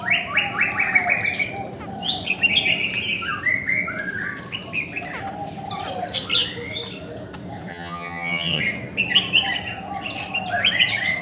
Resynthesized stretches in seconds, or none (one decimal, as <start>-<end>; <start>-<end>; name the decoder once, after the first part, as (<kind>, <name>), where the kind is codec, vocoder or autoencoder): 7.7-8.6 (vocoder, HiFi-GAN)